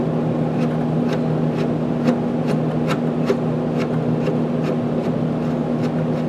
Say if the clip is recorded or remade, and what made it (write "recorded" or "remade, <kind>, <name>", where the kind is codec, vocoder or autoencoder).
recorded